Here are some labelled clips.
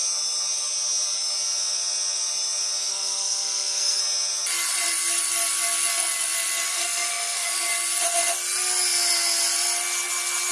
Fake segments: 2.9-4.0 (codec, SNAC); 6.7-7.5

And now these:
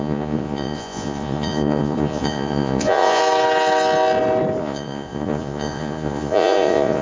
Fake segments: 0.0-3.2 (vocoder, Vocos); 4.6-7.0

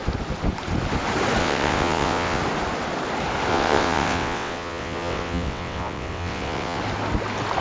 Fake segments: 1.4-2.4 (vocoder, WaveNeXt); 3.5-6.8

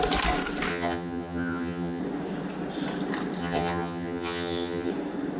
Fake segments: 0.7-2.0 (vocoder, HiFi-GAN); 3.4-4.9